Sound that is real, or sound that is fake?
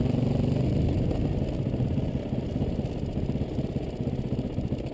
real